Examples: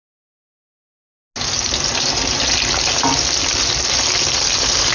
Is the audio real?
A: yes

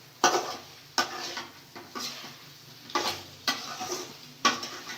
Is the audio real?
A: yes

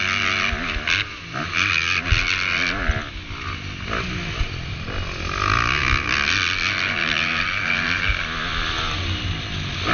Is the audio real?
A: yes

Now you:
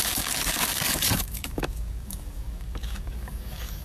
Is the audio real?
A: no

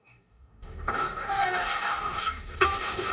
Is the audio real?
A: no